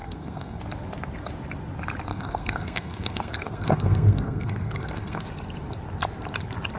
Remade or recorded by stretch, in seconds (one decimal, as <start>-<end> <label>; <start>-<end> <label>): 0.0-0.6 remade; 0.6-2.1 recorded; 2.1-5.2 remade; 5.2-6.8 recorded

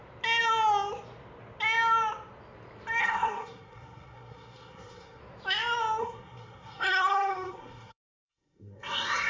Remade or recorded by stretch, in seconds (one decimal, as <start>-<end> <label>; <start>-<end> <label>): 0.0-3.0 recorded; 3.0-5.2 remade; 5.2-6.0 recorded; 6.0-9.3 remade

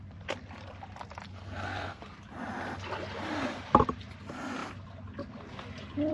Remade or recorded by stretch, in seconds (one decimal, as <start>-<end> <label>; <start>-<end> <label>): 0.0-1.3 recorded; 1.3-2.0 remade; 2.0-6.1 recorded